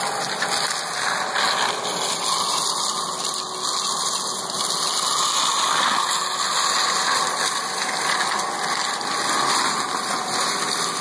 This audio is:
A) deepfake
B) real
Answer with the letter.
B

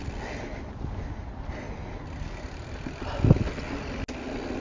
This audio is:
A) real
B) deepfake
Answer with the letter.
A